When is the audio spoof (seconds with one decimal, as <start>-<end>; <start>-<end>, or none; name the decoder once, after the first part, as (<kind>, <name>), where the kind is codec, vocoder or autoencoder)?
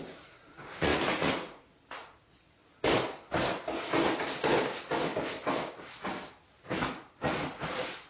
0.0-2.6 (vocoder, Vocos); 7.1-8.1